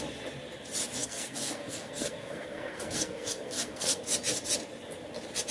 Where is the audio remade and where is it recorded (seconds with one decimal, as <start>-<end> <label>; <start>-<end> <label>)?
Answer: 0.0-1.0 recorded; 1.0-4.0 remade; 4.0-5.5 recorded